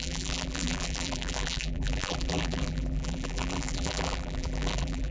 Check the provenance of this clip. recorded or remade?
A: remade